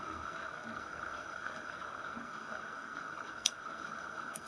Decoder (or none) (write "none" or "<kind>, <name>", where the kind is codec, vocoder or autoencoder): codec, SNAC